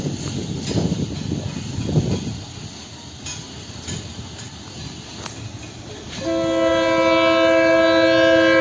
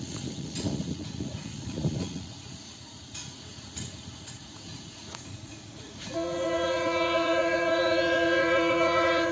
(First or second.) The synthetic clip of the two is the second